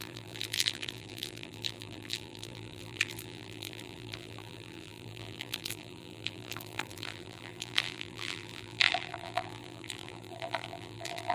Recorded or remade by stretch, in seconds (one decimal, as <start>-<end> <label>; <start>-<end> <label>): 0.0-11.3 remade